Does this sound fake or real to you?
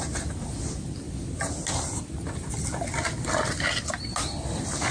real